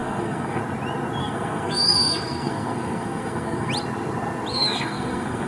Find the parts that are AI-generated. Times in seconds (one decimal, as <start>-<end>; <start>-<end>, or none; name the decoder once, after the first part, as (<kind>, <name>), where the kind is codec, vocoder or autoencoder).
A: 0.0-0.6 (codec, SNAC); 1.2-3.7; 4.5-5.5